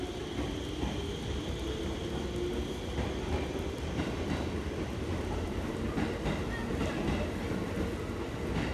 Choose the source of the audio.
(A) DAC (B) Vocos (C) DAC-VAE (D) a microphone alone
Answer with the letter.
D